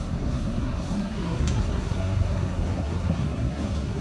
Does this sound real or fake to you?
fake